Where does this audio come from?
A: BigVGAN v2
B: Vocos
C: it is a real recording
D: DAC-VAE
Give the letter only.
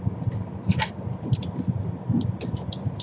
C